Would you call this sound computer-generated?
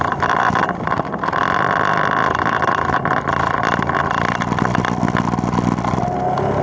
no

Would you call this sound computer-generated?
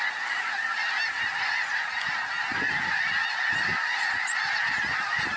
no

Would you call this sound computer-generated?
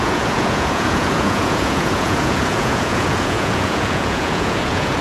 yes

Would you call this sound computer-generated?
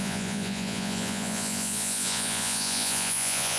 yes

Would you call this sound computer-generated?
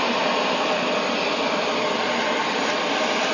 no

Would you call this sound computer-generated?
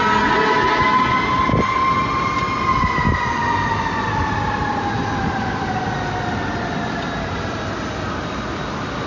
no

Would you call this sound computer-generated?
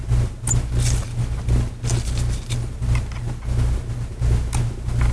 no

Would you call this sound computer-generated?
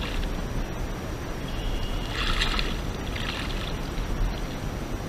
no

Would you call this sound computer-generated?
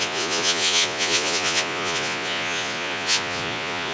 yes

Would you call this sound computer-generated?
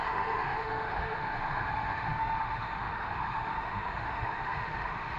yes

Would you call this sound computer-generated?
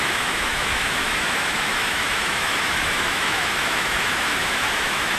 yes